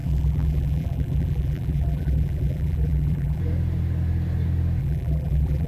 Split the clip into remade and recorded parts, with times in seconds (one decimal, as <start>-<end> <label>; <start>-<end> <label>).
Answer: 0.0-3.4 remade; 3.4-4.8 recorded; 4.8-5.7 remade

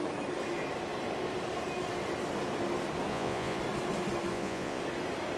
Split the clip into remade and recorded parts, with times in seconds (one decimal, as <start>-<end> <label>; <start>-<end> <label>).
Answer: 0.0-3.1 recorded; 3.1-3.6 remade; 3.6-4.3 recorded; 4.3-4.8 remade; 4.8-5.4 recorded

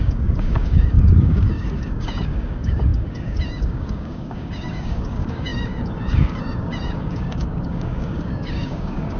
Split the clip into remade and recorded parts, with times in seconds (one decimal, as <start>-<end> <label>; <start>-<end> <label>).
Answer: 0.0-9.2 remade

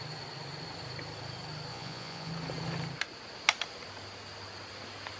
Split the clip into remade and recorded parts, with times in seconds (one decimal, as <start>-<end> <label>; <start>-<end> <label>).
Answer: 0.0-1.7 recorded; 1.7-2.3 remade; 2.3-5.2 recorded